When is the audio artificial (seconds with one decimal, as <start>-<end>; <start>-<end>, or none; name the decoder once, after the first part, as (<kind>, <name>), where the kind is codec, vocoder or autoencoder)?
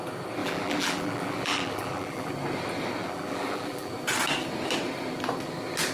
0.4-2.3 (vocoder, BigVGAN v2); 3.0-3.9